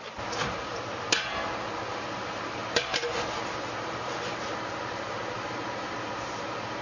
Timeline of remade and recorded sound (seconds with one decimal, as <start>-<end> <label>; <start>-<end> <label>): 0.0-0.7 remade; 0.7-1.9 recorded; 1.9-6.8 remade